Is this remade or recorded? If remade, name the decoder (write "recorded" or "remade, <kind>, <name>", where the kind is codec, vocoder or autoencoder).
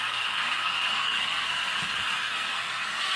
remade, codec, SNAC